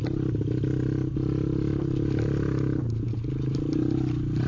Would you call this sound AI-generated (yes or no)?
no